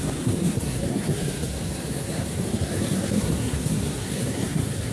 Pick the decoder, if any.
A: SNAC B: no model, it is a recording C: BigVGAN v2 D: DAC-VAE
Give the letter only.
A